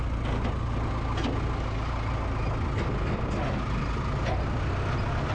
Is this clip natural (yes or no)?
yes